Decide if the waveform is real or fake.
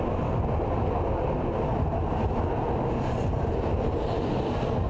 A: real